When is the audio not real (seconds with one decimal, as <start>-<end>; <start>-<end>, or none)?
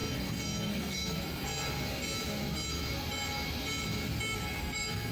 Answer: 0.0-1.5; 4.6-5.1